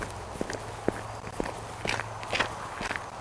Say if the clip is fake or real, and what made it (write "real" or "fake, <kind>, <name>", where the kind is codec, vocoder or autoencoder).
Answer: real